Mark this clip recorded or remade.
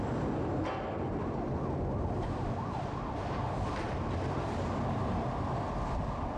recorded